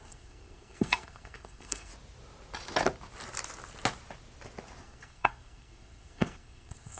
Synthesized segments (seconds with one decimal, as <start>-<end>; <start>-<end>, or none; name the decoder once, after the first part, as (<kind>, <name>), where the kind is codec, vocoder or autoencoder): 0.0-1.9 (codec, SNAC); 4.8-7.0